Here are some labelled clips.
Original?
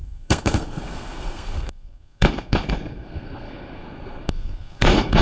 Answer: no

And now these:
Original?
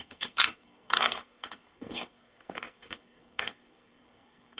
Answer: no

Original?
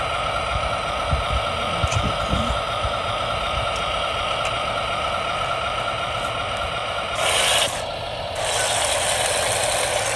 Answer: yes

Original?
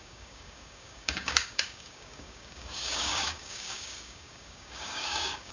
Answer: no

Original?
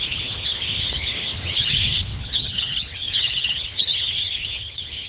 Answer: no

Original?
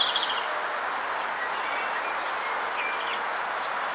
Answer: yes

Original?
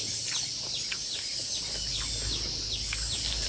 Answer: yes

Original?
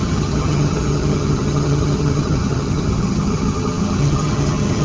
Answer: no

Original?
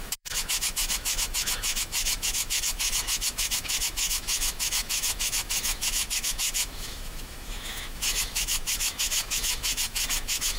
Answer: no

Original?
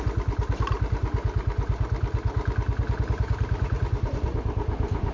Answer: yes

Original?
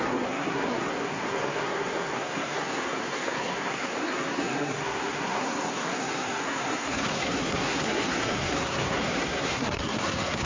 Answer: no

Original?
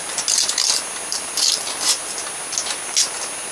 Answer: yes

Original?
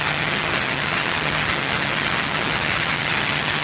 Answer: no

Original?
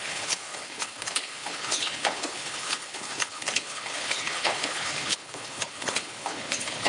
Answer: no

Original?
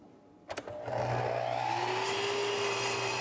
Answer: yes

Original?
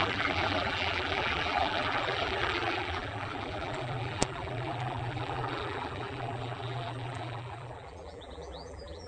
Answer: no